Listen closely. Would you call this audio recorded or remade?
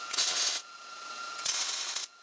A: remade